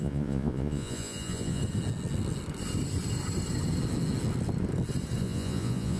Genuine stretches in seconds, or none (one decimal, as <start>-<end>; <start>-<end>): 1.6-5.2